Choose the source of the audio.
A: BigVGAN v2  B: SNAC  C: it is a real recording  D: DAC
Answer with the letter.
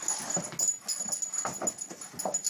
C